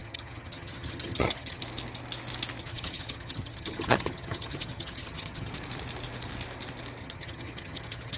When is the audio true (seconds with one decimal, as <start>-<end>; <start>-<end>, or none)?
1.6-2.6; 5.5-7.0